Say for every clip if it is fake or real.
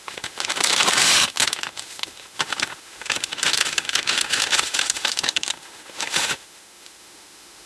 fake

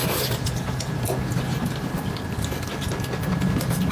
real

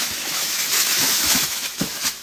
fake